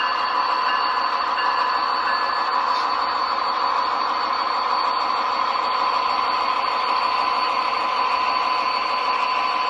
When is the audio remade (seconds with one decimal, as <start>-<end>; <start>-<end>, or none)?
none